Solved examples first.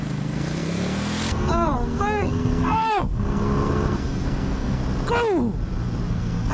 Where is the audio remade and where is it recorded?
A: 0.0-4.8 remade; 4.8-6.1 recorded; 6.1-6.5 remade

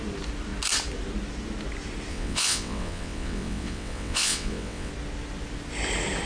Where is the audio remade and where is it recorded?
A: 0.0-2.1 recorded; 2.1-4.9 remade; 4.9-6.3 recorded

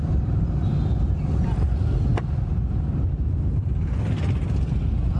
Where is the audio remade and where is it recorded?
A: 0.0-5.2 recorded

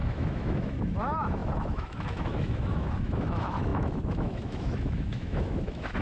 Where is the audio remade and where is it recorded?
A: 0.0-6.0 remade

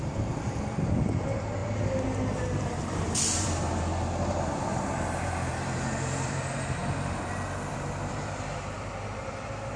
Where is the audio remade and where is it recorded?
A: 0.0-6.8 remade; 6.8-7.7 recorded; 7.7-9.8 remade

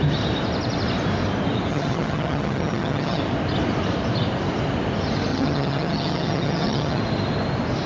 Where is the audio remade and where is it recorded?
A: 0.0-1.7 recorded; 1.7-3.2 remade; 3.2-5.3 recorded; 5.3-7.0 remade; 7.0-7.9 recorded

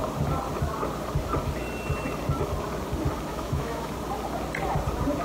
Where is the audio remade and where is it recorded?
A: 0.0-3.3 recorded; 3.3-3.9 remade; 3.9-5.2 recorded